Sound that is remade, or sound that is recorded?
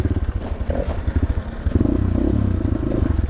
recorded